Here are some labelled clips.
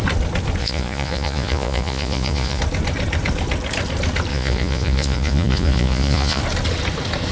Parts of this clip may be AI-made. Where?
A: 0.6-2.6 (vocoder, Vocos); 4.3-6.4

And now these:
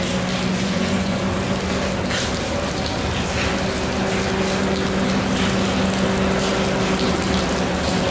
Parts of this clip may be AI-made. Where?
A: 0.5-1.2 (vocoder, Vocos)

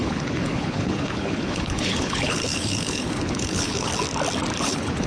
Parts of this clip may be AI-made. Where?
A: 0.0-3.9 (codec, HILCodec); 4.6-5.1

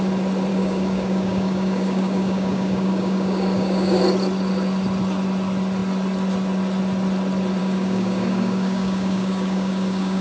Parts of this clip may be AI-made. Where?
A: 0.5-4.0 (codec, DAC); 7.6-10.2